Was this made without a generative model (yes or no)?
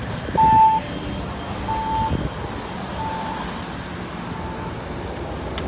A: yes